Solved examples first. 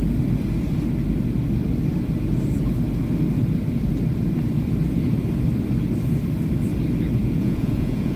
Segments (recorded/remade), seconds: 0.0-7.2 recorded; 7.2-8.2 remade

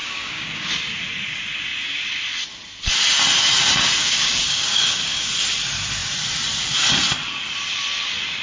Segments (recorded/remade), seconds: 0.0-0.7 remade; 0.7-4.0 recorded; 4.0-5.3 remade; 5.3-8.4 recorded

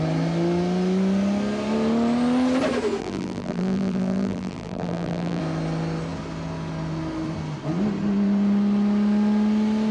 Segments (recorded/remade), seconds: 0.0-3.0 recorded; 3.0-5.4 remade; 5.4-9.9 recorded